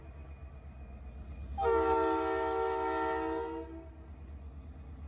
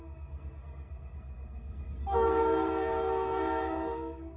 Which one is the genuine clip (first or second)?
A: first